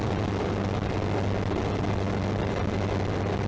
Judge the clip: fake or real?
real